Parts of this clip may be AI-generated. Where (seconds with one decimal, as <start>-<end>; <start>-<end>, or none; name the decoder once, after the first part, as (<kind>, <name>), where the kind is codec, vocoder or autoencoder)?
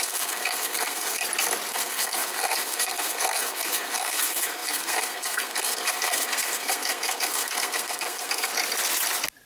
0.0-1.2 (codec, SNAC); 1.7-8.5